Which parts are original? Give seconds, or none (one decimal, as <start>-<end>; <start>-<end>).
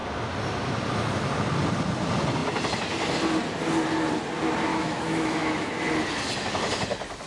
0.0-4.7; 5.7-7.3